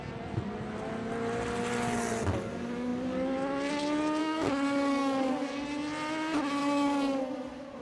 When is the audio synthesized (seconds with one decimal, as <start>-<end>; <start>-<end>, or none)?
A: 4.2-5.5; 6.6-7.2